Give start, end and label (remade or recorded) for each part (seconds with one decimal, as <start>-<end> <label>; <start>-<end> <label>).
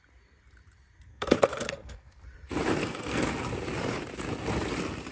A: 0.0-1.1 recorded; 1.1-2.2 remade; 2.2-2.8 recorded; 2.8-3.3 remade; 3.3-5.1 recorded